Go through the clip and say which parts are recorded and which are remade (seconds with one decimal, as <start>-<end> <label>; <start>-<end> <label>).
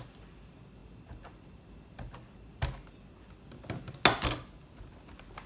0.0-5.5 recorded